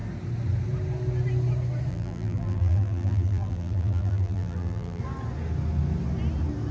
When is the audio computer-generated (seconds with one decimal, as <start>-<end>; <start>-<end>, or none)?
1.9-5.0